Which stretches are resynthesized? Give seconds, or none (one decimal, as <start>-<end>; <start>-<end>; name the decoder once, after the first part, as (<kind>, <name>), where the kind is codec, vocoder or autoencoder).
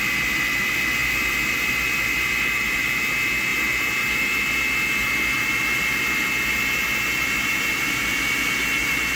none